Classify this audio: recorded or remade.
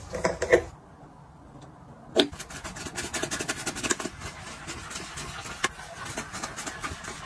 recorded